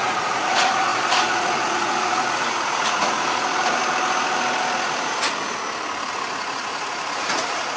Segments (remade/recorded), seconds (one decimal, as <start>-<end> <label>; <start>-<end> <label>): 0.0-3.8 remade; 3.8-6.1 recorded; 6.1-7.8 remade